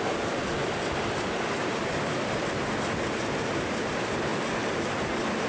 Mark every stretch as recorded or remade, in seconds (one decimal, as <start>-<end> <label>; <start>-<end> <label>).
0.0-1.6 recorded; 1.6-3.9 remade; 3.9-5.5 recorded